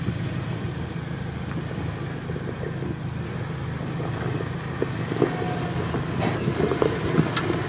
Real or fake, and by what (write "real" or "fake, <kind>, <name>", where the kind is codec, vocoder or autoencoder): real